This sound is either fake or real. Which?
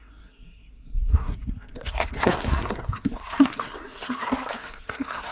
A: fake